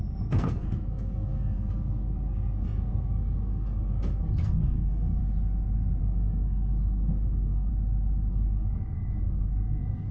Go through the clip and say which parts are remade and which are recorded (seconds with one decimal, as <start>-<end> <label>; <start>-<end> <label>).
0.0-5.2 remade; 5.2-6.0 recorded; 6.0-7.7 remade; 7.7-8.3 recorded; 8.3-10.1 remade